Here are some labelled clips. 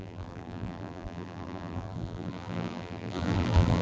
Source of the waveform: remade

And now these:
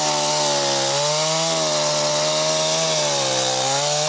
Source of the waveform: recorded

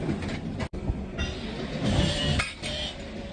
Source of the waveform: remade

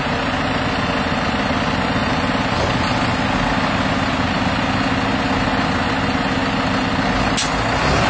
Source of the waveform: recorded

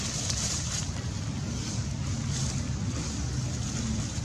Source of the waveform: recorded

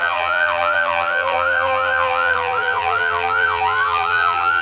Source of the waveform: remade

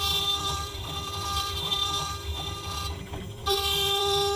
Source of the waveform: remade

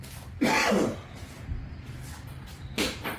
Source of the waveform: remade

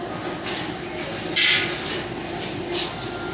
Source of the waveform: recorded